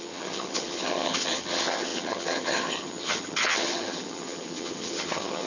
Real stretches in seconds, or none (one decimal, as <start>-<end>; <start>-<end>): none